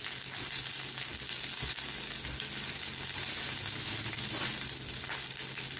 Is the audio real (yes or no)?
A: yes